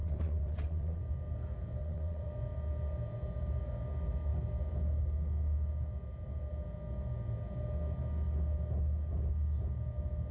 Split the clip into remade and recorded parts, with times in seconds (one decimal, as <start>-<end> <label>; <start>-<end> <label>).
0.0-1.0 remade; 1.0-1.8 recorded; 1.8-2.3 remade; 2.3-10.3 recorded